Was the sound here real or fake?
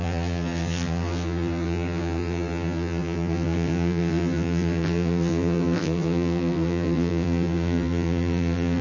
fake